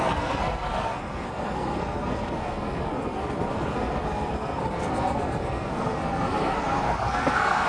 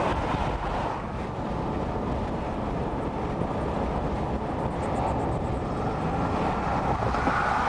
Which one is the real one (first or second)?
second